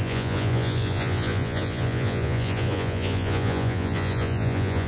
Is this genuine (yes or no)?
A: no